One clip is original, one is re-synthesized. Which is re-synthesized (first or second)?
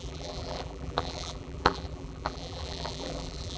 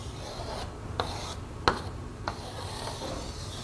first